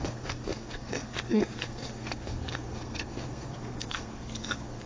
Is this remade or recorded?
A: remade